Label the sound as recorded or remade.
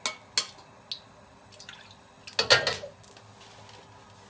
recorded